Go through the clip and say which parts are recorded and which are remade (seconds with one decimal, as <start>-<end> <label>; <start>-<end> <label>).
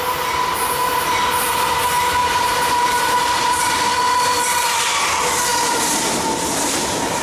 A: 0.0-2.2 recorded; 2.2-5.1 remade; 5.1-5.5 recorded; 5.5-7.2 remade